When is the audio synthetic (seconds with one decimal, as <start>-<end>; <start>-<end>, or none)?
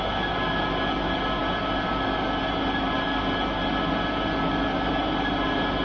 none